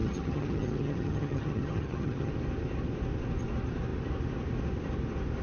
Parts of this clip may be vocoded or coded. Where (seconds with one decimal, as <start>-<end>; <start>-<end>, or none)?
0.0-2.3